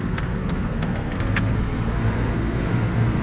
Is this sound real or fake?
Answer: fake